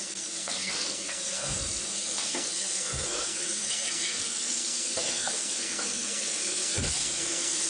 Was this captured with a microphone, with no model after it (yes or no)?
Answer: no